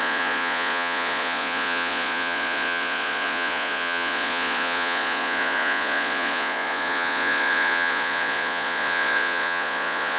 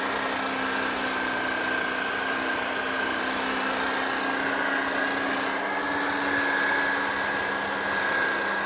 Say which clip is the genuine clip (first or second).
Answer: second